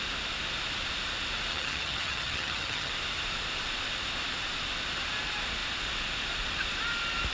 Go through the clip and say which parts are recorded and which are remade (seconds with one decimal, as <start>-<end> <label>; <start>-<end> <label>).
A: 0.0-1.5 recorded; 1.5-2.9 remade; 2.9-7.3 recorded